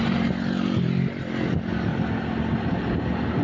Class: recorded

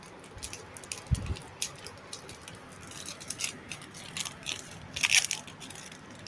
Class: recorded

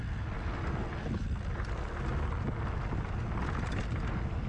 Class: recorded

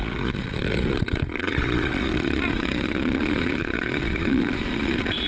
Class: remade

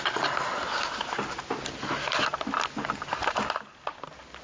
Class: recorded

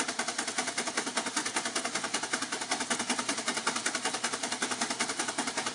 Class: recorded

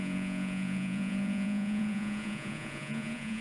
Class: remade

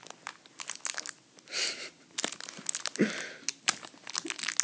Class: recorded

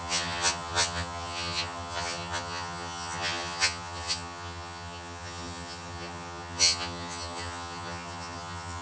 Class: remade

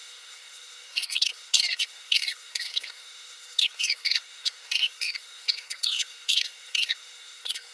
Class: remade